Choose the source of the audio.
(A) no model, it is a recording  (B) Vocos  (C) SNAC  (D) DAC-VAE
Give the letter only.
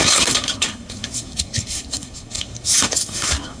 C